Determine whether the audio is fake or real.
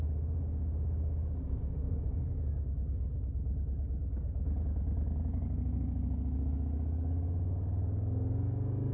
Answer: fake